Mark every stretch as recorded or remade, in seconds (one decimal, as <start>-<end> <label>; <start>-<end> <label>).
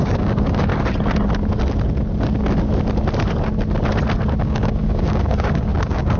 0.0-0.7 remade; 0.7-4.4 recorded; 4.4-6.2 remade